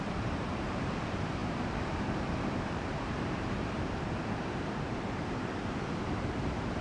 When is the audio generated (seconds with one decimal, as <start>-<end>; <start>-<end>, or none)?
0.0-6.8